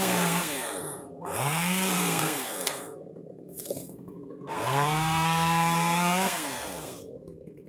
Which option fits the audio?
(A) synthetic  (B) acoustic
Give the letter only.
A